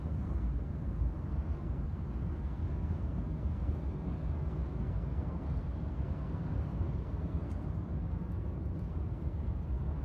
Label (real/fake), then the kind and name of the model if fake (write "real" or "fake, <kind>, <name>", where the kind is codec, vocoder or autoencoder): fake, codec, SNAC